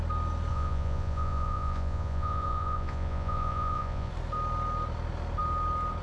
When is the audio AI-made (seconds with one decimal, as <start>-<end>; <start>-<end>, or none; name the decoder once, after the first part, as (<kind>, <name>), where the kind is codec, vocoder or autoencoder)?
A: 0.5-4.1 (vocoder, Vocos)